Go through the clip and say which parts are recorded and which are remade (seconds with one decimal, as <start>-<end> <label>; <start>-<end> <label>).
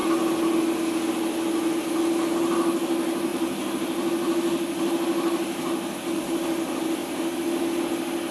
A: 0.0-8.3 recorded